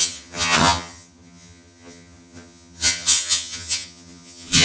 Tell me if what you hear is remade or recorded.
remade